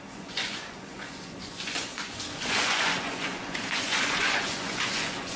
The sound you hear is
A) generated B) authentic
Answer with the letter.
A